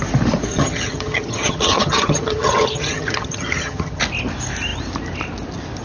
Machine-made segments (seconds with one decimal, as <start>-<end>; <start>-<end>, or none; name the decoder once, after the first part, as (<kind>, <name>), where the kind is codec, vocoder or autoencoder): 0.5-4.0 (vocoder, HiFi-GAN)